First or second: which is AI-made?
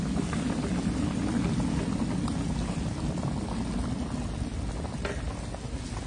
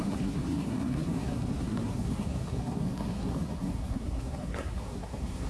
second